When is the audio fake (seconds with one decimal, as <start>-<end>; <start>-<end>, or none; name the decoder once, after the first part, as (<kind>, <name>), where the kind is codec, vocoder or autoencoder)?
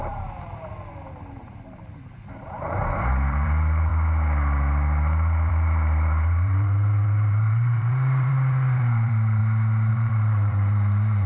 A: 0.0-3.9 (vocoder, BigVGAN v2); 5.5-9.4; 9.9-11.3